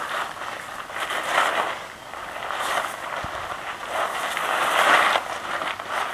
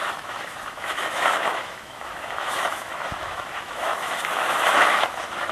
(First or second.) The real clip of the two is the first